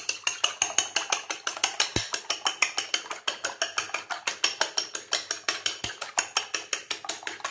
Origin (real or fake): real